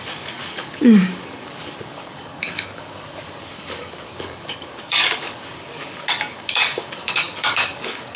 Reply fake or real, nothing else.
fake